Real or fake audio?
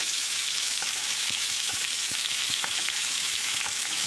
fake